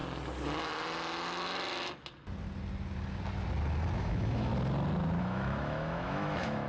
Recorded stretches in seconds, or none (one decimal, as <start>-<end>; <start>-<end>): 0.0-4.0; 4.5-5.2